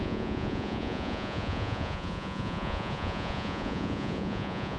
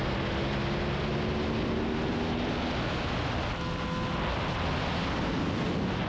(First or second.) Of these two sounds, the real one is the second